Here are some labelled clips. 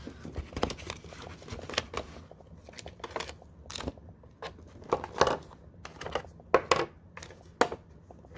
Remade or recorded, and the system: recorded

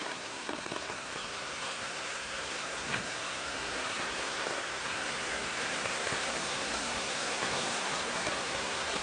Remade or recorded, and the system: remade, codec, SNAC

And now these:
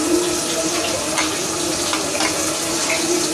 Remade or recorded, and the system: recorded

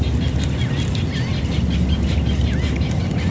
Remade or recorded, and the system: recorded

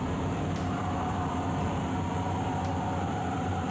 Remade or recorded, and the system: remade, vocoder, BigVGAN v2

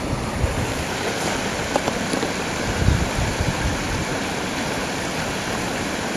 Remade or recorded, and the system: remade, vocoder, BigVGAN v2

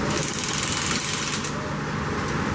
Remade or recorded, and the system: recorded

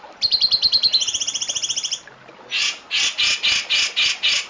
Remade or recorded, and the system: recorded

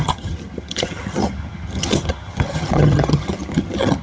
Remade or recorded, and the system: remade, vocoder, HiFi-GAN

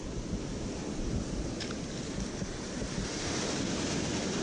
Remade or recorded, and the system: recorded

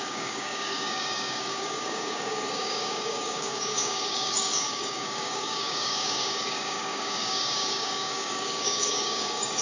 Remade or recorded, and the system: remade, codec, DAC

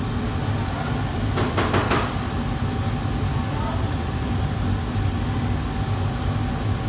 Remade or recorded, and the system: recorded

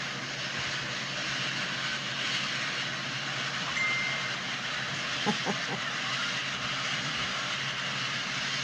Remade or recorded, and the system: recorded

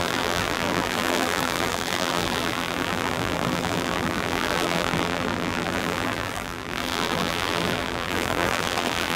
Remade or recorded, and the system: remade, vocoder, BigVGAN v2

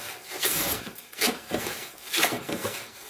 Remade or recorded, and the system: remade, codec, SNAC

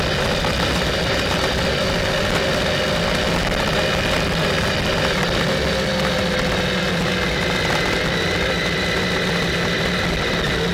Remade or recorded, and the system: recorded